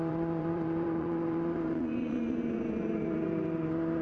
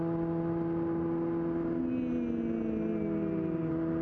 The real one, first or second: second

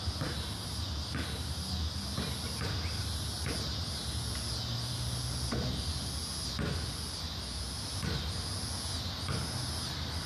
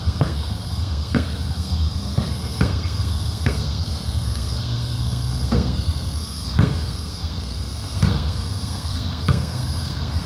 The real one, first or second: first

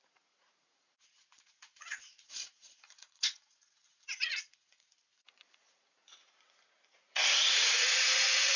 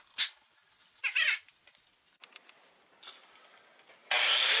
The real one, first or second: second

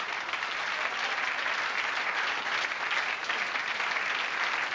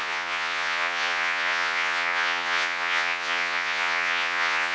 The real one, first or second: first